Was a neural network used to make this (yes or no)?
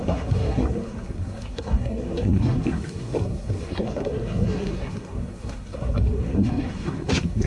yes